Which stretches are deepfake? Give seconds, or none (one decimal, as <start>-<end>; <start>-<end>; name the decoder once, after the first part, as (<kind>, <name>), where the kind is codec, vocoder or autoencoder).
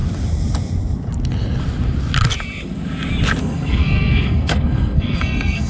3.4-5.7 (codec, SNAC)